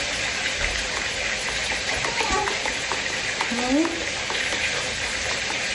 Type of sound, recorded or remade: remade